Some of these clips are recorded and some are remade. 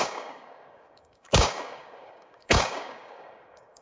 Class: remade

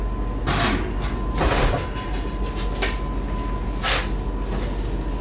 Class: recorded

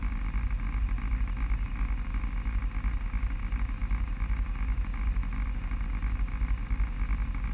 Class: recorded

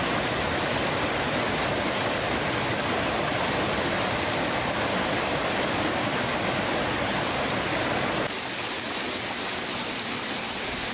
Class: recorded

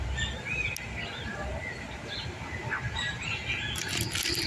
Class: recorded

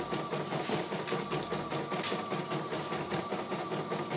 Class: recorded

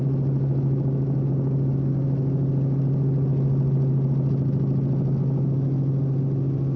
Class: recorded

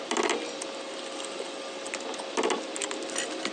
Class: recorded